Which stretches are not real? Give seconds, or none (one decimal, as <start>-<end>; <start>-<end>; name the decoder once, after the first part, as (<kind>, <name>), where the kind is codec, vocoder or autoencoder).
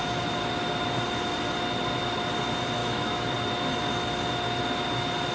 2.8-3.3 (autoencoder, DAC-VAE)